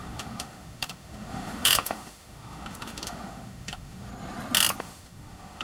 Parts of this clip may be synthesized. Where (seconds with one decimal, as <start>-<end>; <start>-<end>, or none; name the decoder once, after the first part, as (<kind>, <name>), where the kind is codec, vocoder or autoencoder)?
0.0-4.1 (autoencoder, DAC-VAE); 4.8-5.6